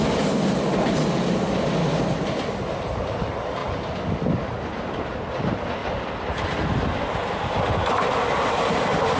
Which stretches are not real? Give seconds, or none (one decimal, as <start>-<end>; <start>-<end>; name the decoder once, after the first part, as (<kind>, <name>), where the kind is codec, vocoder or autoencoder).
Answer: none